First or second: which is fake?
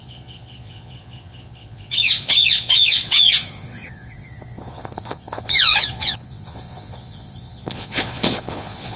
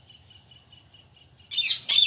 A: first